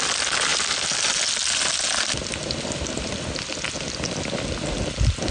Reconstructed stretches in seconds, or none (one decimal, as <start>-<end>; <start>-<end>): none

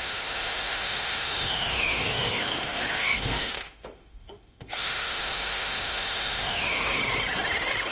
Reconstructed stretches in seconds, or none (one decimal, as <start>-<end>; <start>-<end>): 0.0-7.0

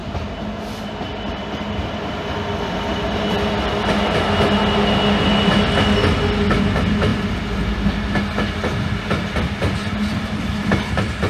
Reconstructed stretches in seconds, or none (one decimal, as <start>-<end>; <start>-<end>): none

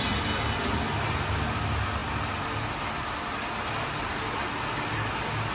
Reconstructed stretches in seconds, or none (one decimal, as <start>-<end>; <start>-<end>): none